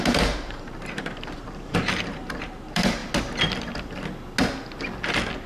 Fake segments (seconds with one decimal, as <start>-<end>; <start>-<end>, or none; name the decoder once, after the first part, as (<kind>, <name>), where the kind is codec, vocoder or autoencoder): 0.0-3.0 (vocoder, BigVGAN v2)